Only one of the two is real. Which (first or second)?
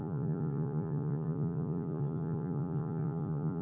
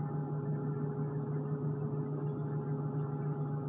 second